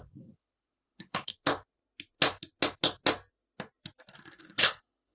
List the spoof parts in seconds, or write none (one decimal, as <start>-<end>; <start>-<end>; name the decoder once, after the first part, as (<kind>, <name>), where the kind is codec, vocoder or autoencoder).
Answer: 0.0-1.3 (codec, HILCodec); 4.4-5.1